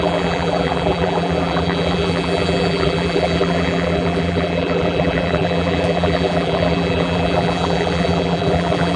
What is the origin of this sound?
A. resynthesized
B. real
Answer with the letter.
A